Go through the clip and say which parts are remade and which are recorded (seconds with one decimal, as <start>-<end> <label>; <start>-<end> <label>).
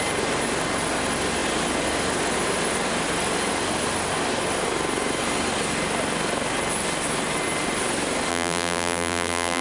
0.0-8.3 recorded; 8.3-9.6 remade